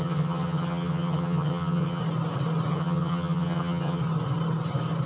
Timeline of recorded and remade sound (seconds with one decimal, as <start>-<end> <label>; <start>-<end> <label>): 0.0-2.0 remade; 2.0-2.7 recorded; 2.7-4.0 remade; 4.0-5.1 recorded